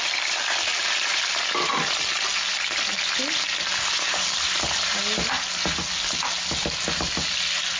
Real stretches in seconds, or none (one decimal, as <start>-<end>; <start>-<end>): 0.0-0.7; 1.2-7.8